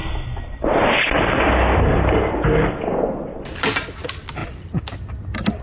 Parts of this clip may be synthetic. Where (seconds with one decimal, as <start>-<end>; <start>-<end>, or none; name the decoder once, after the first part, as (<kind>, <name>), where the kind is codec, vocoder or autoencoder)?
0.0-2.2 (vocoder, BigVGAN v2); 4.4-5.6